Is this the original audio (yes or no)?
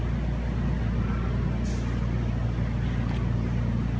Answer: yes